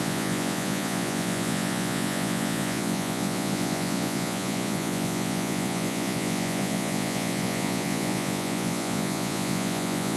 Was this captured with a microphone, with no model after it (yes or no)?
no